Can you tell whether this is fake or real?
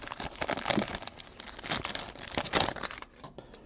real